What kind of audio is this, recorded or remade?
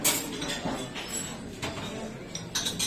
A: recorded